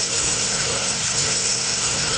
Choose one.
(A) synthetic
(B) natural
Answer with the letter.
A